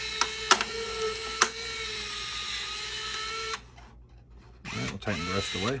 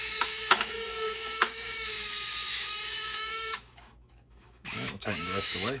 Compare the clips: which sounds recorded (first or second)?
first